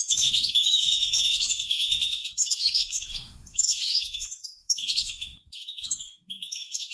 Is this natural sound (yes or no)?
no